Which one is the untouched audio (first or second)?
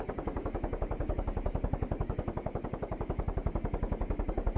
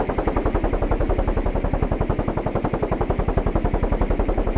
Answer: second